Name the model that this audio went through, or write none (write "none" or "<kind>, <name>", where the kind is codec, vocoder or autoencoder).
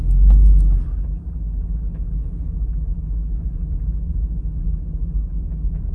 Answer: none